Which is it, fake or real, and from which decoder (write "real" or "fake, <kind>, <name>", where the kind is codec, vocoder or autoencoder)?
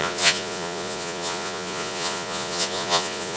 fake, vocoder, Vocos